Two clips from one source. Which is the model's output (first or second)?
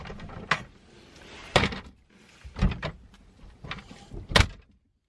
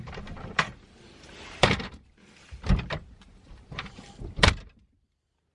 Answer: second